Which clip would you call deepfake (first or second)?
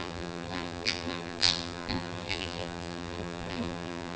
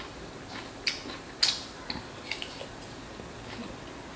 first